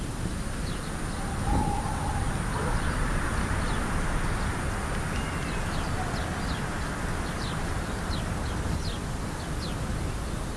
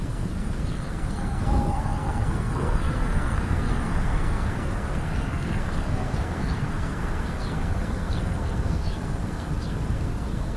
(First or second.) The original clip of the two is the first